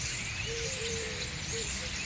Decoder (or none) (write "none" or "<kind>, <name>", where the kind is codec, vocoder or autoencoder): vocoder, BigVGAN v2